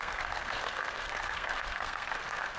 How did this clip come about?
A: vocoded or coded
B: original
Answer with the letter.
A